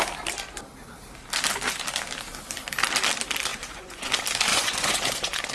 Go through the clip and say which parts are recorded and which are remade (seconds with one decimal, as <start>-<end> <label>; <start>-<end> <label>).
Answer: 0.0-3.5 recorded; 3.5-4.1 remade; 4.1-4.5 recorded; 4.5-5.5 remade